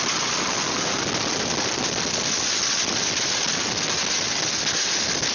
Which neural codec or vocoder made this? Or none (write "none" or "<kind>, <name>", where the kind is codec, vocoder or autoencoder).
none